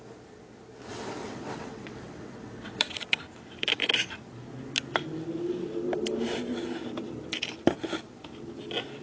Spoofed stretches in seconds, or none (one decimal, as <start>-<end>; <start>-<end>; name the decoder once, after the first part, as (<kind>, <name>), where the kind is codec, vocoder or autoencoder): 0.9-2.8 (vocoder, WaveNeXt)